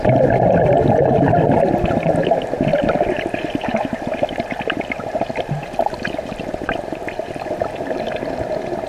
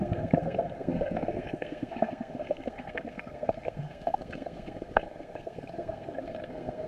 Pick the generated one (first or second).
second